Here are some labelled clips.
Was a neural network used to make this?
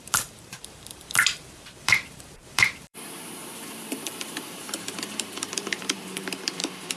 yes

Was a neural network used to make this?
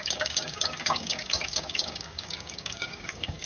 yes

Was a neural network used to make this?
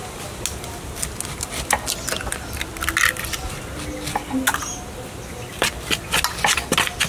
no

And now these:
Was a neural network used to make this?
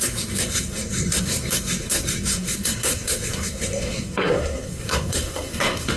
yes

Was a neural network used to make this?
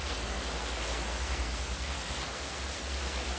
yes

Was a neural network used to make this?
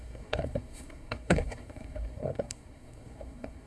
yes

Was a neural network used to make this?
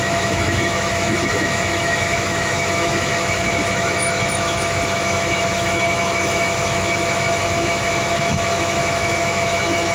yes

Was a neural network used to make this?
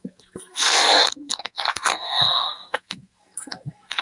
yes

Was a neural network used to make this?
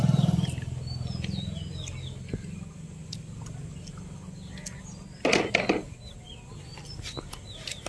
no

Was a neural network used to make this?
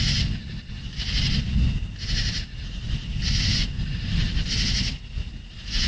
no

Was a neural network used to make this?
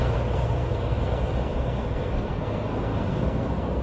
yes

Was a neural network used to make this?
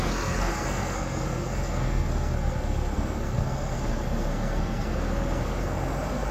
yes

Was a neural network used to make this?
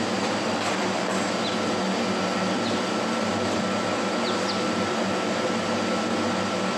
no